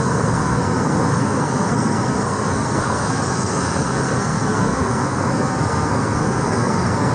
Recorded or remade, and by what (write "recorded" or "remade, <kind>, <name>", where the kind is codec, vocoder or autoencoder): remade, codec, SNAC